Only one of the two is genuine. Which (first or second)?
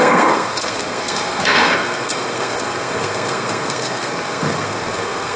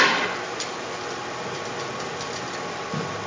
second